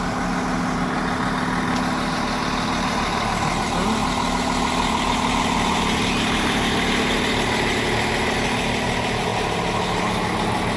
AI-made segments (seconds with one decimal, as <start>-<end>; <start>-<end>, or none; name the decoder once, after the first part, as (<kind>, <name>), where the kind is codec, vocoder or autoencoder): none